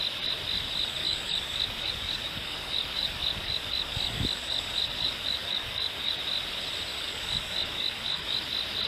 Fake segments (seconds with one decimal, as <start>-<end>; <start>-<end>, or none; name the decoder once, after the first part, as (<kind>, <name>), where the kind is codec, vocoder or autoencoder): 1.0-6.1 (codec, DAC); 6.9-8.4